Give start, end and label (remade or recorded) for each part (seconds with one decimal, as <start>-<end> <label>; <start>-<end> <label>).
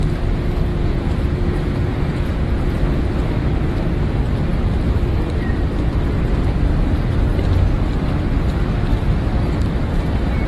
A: 0.0-0.7 recorded; 0.7-2.4 remade; 2.4-10.5 recorded